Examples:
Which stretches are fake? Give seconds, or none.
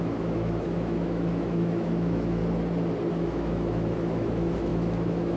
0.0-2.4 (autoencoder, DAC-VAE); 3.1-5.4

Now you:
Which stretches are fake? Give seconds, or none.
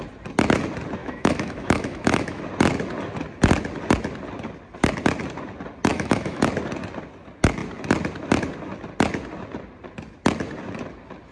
1.0-2.4 (autoencoder, DAC-VAE); 5.9-6.4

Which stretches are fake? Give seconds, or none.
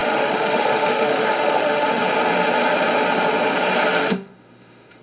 0.0-2.0 (autoencoder, DAC-VAE); 4.0-5.0